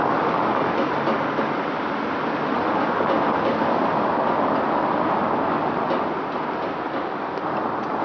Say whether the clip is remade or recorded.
recorded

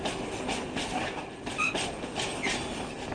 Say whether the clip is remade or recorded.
recorded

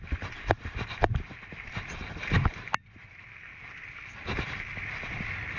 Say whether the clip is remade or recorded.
recorded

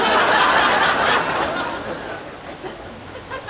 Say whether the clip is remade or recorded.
recorded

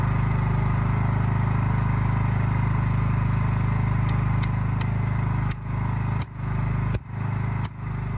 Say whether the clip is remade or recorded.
recorded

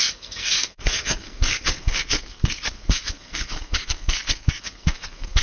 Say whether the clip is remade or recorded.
remade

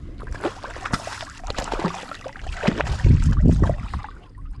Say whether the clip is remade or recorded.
recorded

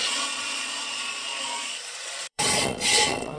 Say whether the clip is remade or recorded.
remade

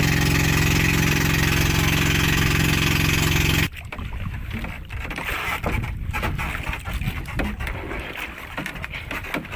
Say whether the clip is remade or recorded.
recorded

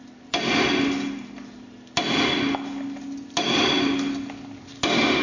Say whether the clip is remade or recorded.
recorded